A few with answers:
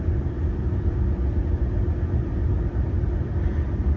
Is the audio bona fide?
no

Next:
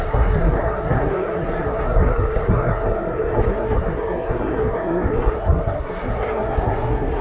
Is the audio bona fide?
no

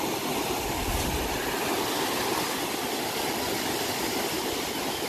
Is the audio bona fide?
yes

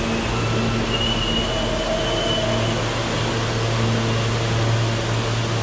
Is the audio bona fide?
yes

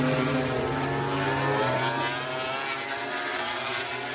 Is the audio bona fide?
yes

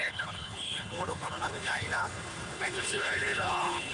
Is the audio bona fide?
no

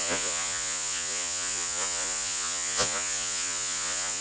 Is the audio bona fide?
no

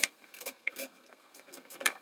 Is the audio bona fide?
no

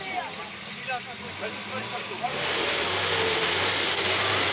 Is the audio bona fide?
yes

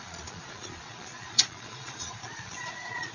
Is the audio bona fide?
no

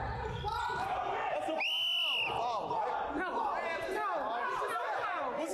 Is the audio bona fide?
yes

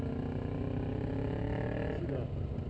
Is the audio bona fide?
yes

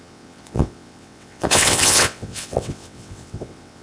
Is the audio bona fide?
no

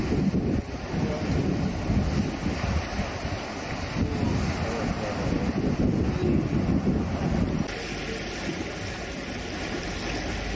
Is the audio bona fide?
yes